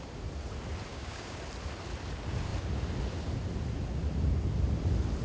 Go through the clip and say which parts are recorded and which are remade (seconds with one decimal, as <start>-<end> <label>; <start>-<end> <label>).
0.0-0.9 recorded; 0.9-1.4 remade; 1.4-5.2 recorded